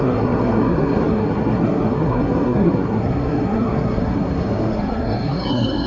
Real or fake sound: fake